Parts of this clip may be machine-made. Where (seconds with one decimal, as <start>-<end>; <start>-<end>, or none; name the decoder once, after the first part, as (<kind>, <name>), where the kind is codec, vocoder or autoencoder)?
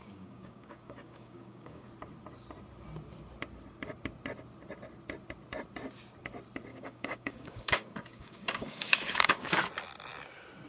0.0-1.9 (codec, DAC); 6.7-9.6